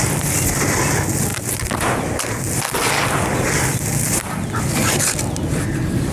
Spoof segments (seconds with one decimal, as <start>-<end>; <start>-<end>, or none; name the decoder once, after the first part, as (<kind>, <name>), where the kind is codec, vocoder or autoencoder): none